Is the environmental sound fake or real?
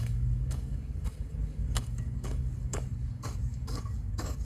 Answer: fake